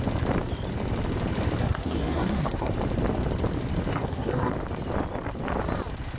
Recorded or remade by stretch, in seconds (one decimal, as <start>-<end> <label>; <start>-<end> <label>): 0.0-1.6 recorded; 1.6-2.7 remade; 2.7-3.9 recorded; 3.9-4.5 remade; 4.5-6.2 recorded